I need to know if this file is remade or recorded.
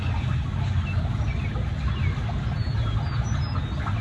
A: recorded